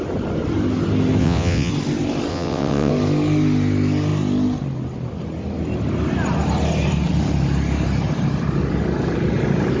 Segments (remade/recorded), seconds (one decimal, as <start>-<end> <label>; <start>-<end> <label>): 0.0-1.2 recorded; 1.2-1.7 remade; 1.7-2.3 recorded; 2.3-2.9 remade; 2.9-9.8 recorded